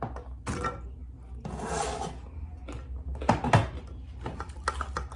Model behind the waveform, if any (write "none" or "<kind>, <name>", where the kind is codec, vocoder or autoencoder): none